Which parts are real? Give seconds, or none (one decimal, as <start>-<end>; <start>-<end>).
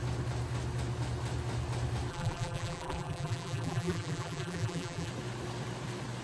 0.0-2.1; 5.1-6.2